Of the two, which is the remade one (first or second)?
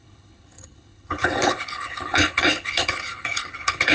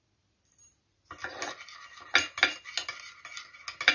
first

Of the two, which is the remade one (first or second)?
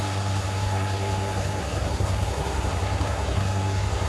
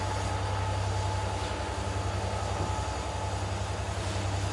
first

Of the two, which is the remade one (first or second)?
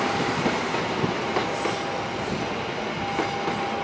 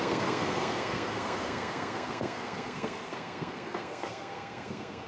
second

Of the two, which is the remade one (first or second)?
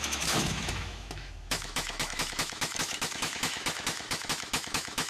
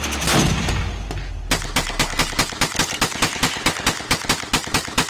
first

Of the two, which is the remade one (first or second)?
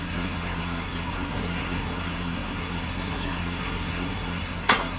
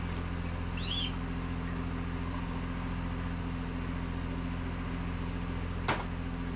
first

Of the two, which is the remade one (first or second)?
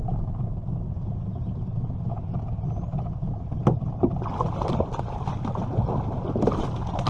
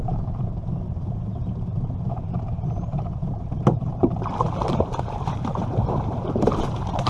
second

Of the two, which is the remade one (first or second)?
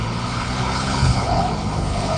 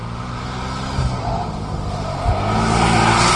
first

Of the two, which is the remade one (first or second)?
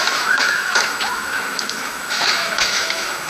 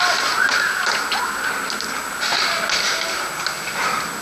first